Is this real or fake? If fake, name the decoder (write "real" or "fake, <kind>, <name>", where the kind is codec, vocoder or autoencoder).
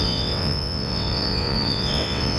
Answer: fake, vocoder, WaveNeXt